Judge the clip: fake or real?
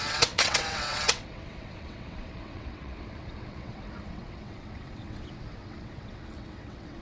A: fake